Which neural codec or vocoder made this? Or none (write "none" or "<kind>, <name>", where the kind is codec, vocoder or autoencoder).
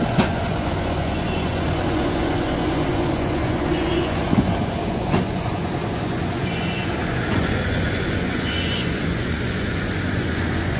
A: vocoder, Vocos